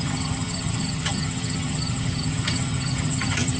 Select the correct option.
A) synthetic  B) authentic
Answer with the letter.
A